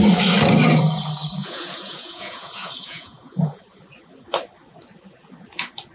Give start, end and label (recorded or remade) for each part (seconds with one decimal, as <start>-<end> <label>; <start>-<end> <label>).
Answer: 0.0-1.4 recorded; 1.4-3.6 remade; 3.6-5.9 recorded